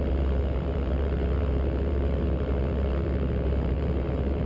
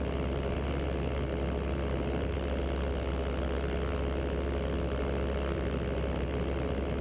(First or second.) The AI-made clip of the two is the first